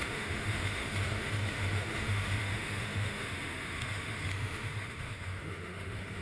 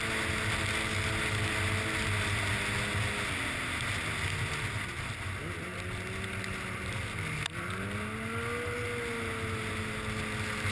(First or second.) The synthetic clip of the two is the first